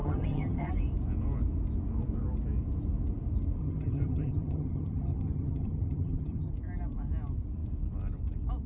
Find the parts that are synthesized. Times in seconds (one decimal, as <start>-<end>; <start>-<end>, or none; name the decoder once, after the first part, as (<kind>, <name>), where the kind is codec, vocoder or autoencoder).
0.0-0.7 (vocoder, HiFi-GAN); 3.6-6.5